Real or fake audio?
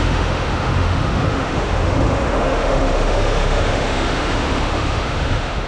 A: fake